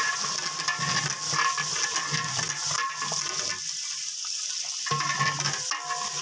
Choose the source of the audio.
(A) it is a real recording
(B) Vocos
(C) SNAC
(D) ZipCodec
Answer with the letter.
A